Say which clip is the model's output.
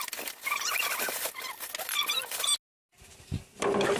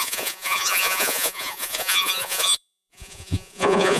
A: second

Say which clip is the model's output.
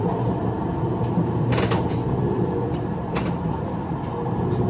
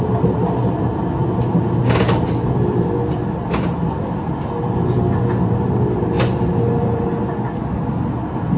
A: first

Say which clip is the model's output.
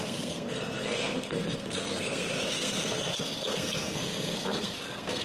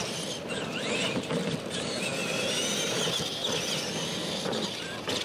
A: first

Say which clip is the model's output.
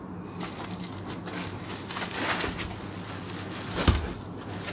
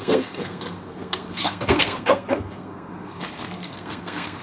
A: second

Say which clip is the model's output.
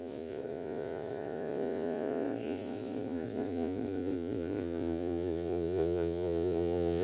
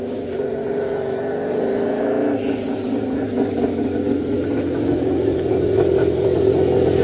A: first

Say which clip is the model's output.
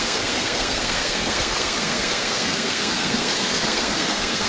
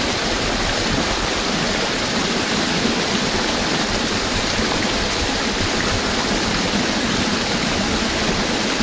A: first